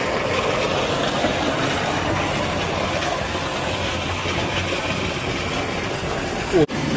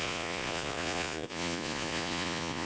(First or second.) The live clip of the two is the first